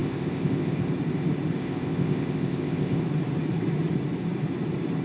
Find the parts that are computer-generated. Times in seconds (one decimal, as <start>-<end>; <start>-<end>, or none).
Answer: 0.0-0.9; 1.6-3.0